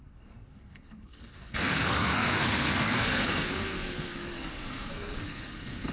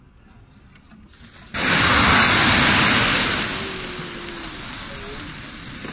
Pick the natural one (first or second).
second